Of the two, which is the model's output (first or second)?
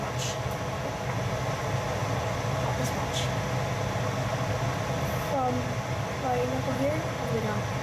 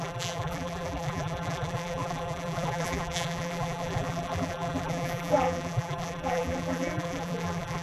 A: second